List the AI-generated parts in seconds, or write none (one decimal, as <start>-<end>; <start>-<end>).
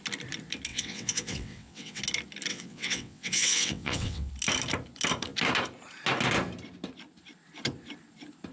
0.7-2.0; 2.5-4.3